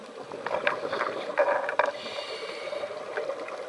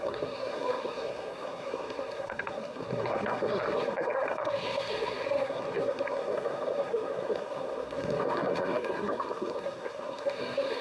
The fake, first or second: second